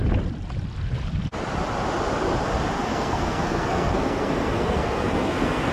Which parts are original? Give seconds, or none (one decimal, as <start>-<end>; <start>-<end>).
0.0-2.9